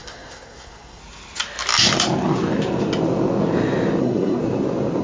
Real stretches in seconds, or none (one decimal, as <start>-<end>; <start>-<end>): 1.0-4.0; 4.4-5.0